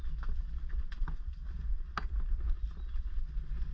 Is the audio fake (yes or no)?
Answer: no